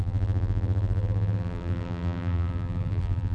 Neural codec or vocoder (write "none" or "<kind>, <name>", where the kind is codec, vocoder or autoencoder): vocoder, BigVGAN v2